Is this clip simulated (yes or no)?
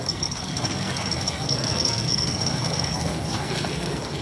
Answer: yes